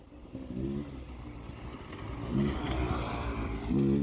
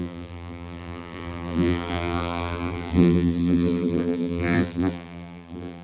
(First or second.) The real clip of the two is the first